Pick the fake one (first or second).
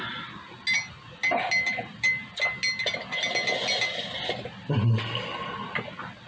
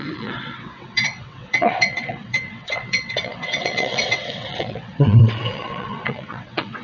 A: second